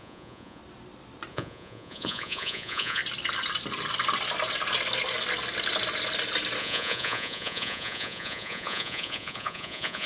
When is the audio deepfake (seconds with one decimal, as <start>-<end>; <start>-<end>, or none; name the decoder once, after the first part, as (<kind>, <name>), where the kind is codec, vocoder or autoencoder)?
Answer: 0.0-0.6 (vocoder, Vocos); 1.3-3.0; 6.6-10.1